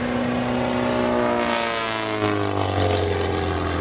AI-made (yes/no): no